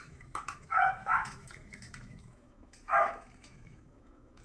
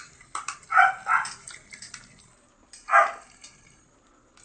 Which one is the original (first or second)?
second